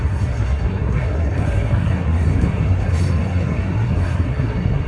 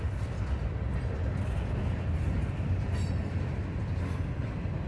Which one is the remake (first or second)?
first